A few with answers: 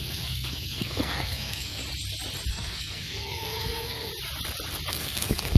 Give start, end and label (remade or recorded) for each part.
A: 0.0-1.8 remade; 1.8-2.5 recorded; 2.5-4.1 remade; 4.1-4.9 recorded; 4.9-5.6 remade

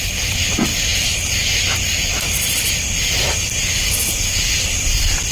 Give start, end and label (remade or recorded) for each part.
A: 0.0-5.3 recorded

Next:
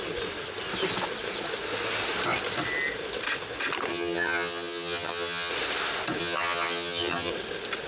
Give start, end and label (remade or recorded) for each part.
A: 0.0-3.9 recorded; 3.9-5.5 remade; 5.5-6.2 recorded; 6.2-7.3 remade; 7.3-7.9 recorded